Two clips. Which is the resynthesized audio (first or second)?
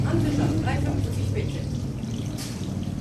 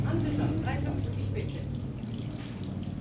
first